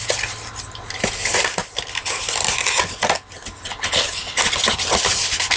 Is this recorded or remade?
recorded